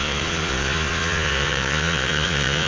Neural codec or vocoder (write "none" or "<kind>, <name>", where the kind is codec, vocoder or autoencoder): vocoder, Vocos